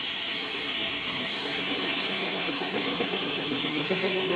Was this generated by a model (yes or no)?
yes